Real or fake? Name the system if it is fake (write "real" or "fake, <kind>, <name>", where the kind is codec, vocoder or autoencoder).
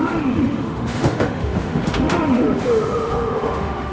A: fake, autoencoder, DAC-VAE